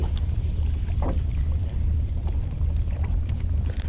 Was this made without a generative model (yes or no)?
no